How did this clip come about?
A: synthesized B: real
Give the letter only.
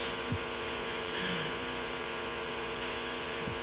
A